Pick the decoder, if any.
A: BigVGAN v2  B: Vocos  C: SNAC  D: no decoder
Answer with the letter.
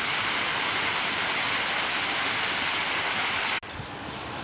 D